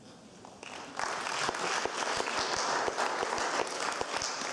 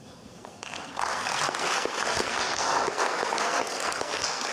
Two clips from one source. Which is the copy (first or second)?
second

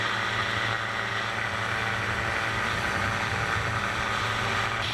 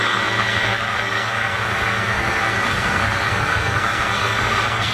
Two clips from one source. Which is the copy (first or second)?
second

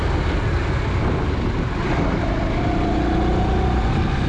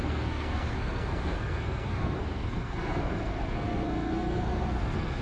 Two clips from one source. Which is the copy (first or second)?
second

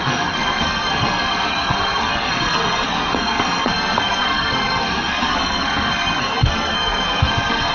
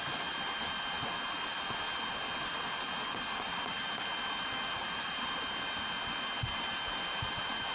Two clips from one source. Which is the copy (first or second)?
first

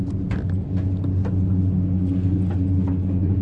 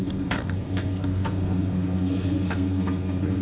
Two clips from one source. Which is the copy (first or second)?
second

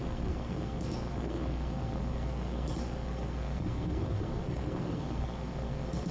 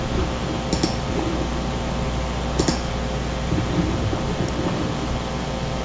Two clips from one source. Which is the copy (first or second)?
first